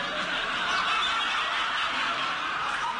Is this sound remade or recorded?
recorded